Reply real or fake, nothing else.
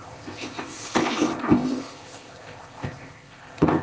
fake